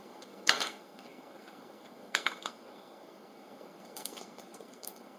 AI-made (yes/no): yes